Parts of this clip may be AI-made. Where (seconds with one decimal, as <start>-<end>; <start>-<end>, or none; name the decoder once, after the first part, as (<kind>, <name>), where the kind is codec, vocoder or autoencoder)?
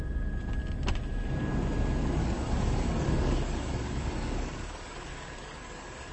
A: 2.2-6.1 (codec, DAC)